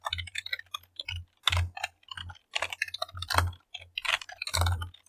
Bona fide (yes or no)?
yes